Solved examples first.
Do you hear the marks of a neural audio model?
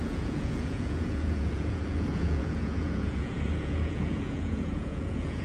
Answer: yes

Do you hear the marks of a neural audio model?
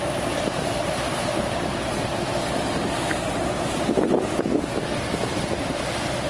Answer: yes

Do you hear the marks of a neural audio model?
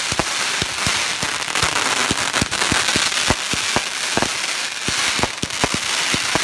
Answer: no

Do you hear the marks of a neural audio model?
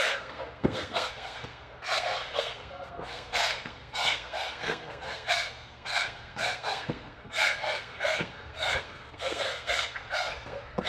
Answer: yes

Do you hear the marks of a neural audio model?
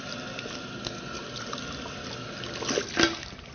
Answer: no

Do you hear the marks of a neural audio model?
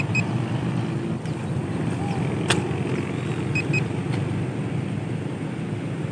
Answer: no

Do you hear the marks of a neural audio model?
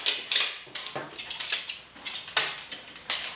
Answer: no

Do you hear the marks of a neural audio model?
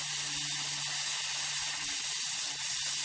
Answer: no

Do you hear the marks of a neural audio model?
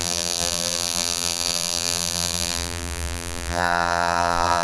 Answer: yes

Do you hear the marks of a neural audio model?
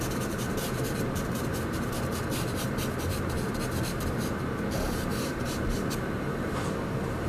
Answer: yes